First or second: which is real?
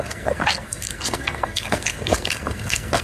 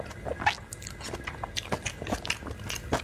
second